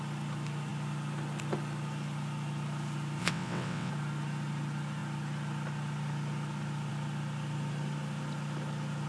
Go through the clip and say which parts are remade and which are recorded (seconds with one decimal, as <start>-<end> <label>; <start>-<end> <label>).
0.0-3.2 recorded; 3.2-3.9 remade; 3.9-9.1 recorded